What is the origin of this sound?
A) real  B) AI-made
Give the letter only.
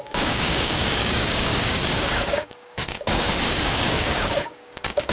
B